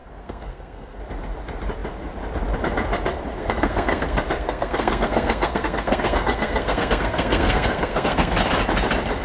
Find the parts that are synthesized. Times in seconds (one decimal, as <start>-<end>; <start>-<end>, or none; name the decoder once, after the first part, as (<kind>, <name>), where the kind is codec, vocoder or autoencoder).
0.0-1.0 (codec, SNAC); 3.4-8.3